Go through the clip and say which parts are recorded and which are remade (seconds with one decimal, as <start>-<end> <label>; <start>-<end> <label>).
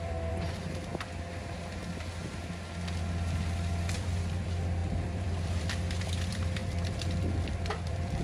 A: 0.0-0.9 remade; 0.9-3.9 recorded; 3.9-8.2 remade